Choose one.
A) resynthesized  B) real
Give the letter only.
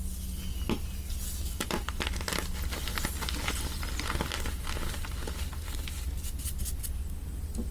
B